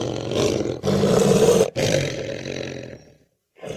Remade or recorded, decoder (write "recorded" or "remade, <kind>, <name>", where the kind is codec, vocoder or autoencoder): remade, vocoder, BigVGAN v2